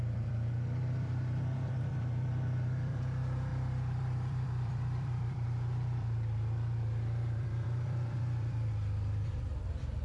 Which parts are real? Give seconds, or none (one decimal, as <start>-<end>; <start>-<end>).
none